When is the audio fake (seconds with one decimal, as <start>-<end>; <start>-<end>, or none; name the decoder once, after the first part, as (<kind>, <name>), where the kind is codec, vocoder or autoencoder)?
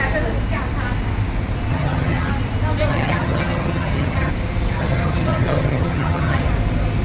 1.7-2.3 (vocoder, HiFi-GAN); 2.9-4.3; 4.8-6.5